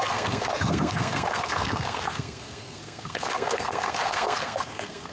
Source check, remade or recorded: remade